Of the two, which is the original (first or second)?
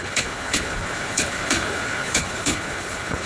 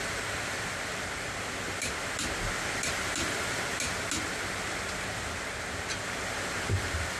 second